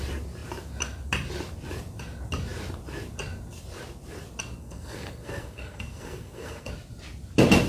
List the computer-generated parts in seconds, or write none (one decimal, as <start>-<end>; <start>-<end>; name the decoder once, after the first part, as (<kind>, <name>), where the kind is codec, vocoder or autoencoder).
4.6-6.7 (codec, SNAC)